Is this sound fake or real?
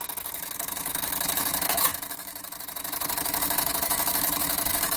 fake